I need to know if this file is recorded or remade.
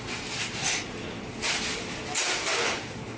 recorded